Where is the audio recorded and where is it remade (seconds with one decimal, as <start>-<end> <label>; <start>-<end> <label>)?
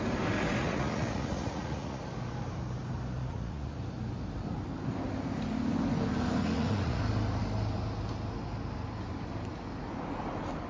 0.0-0.6 recorded; 0.6-2.0 remade; 2.0-3.2 recorded; 3.2-3.8 remade; 3.8-6.4 recorded; 6.4-7.0 remade; 7.0-10.7 recorded